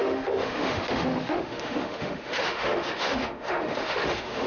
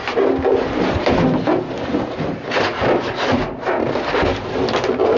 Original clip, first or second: second